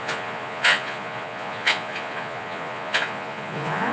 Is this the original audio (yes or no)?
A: no